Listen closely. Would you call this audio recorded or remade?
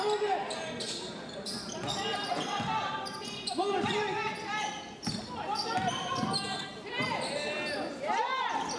recorded